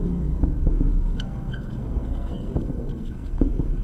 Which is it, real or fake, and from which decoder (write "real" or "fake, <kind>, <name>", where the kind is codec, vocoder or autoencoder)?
fake, codec, SNAC